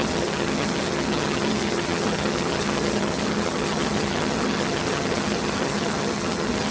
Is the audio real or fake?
fake